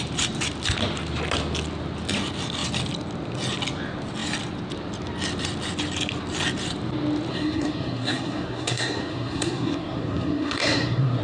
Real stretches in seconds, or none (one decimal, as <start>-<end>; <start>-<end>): 0.0-7.3